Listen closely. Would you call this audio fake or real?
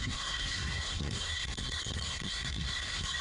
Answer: fake